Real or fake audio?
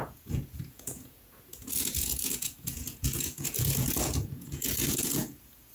fake